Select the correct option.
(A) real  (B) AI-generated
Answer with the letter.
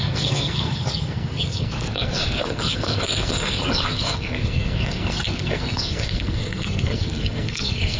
B